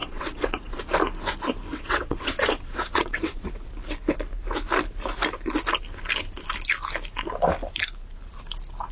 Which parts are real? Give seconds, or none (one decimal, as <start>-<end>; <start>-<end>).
0.8-1.7; 3.7-8.9